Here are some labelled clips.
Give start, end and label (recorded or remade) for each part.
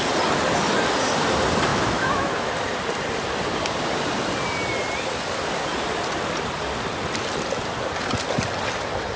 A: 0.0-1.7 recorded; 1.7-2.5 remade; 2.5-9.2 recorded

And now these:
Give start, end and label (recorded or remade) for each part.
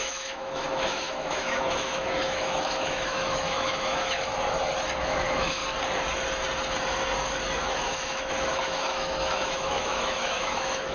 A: 0.0-4.3 remade; 4.3-5.0 recorded; 5.0-5.6 remade; 5.6-7.6 recorded; 7.6-10.9 remade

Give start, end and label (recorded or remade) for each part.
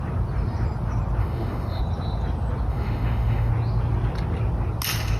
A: 0.0-1.2 recorded; 1.2-1.8 remade; 1.8-2.7 recorded; 2.7-3.5 remade; 3.5-5.2 recorded